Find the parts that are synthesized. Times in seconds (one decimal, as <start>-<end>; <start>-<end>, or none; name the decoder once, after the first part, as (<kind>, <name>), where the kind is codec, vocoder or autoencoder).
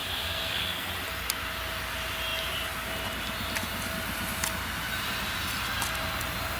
0.0-0.9 (codec, SNAC)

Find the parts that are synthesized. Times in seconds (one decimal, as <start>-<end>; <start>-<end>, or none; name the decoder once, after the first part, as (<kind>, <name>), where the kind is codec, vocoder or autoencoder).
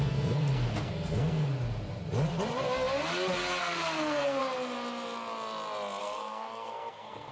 0.0-1.5 (codec, SNAC); 3.6-4.4; 6.0-7.3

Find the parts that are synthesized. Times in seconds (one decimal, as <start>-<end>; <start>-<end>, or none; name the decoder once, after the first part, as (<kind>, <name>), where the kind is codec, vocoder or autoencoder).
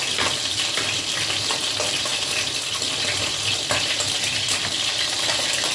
none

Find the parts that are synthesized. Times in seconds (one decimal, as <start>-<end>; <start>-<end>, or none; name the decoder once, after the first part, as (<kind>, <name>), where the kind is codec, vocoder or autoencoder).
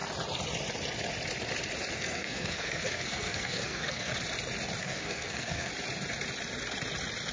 1.9-4.1 (codec, SNAC); 4.8-5.7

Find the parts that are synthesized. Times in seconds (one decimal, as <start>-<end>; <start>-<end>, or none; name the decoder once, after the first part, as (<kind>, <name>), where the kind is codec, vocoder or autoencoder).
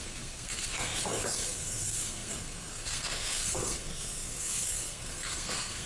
0.0-5.9 (codec, SNAC)